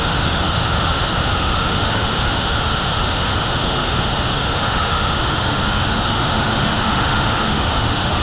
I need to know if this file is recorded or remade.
remade